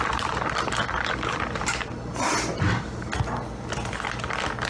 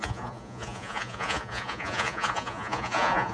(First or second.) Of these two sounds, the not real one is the second